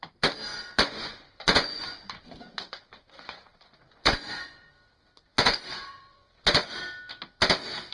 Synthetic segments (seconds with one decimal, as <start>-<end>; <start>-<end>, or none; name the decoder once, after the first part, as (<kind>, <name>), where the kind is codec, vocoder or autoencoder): 0.5-4.7 (vocoder, Vocos); 5.3-6.8